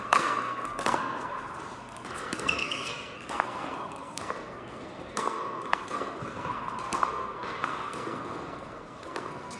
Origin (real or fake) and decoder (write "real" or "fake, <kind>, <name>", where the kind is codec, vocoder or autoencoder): fake, codec, SNAC